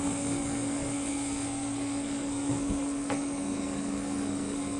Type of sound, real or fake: fake